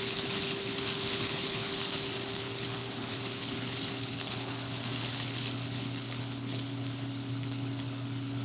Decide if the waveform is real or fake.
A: fake